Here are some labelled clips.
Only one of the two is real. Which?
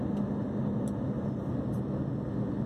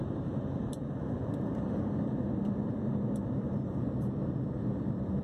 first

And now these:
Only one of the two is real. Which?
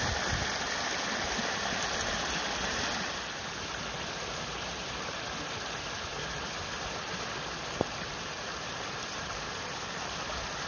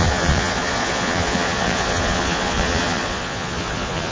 first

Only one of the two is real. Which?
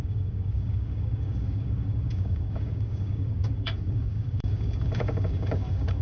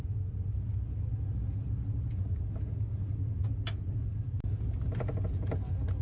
second